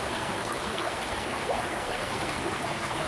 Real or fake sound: fake